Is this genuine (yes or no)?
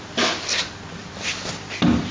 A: no